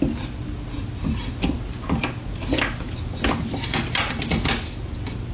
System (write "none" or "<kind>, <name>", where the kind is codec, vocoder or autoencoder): none